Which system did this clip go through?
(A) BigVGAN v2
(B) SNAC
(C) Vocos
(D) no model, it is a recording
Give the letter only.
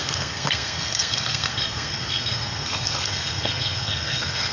B